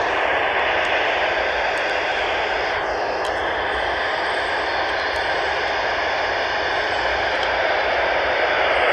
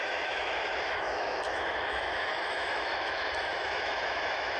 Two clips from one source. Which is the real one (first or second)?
first